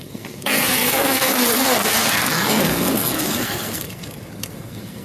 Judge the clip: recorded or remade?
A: remade